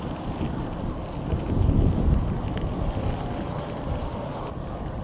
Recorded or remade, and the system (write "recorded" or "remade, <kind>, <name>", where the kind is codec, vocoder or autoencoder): recorded